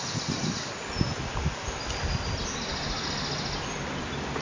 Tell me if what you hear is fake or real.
real